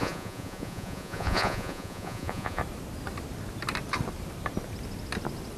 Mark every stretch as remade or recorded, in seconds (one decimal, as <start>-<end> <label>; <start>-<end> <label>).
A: 0.0-2.6 remade; 2.6-5.6 recorded